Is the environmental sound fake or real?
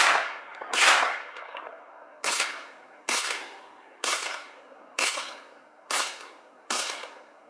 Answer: fake